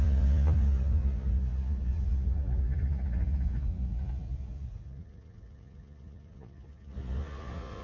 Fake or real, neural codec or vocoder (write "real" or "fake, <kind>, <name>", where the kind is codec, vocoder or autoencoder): fake, vocoder, Vocos